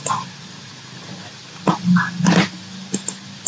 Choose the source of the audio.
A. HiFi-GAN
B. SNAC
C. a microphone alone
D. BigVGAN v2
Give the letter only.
C